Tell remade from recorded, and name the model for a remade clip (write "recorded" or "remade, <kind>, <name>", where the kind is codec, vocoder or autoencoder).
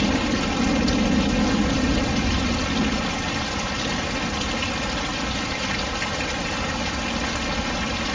recorded